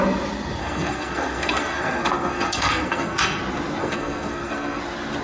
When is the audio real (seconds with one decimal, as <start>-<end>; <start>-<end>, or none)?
0.0-0.6; 3.4-3.8; 4.8-5.2